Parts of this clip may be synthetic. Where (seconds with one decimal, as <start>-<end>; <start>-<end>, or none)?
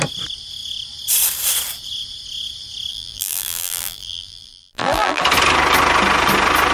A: 2.9-5.2